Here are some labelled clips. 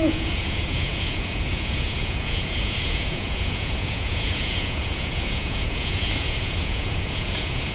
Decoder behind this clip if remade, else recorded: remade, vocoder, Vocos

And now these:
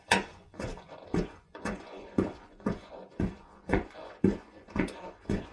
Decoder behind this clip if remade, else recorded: remade, vocoder, Vocos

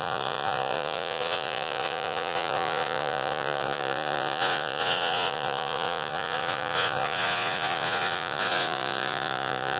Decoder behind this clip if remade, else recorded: remade, vocoder, Vocos